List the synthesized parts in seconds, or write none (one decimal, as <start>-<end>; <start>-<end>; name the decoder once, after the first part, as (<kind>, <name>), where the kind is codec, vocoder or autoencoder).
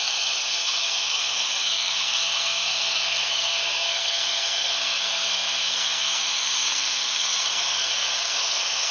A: 0.0-8.9 (codec, SNAC)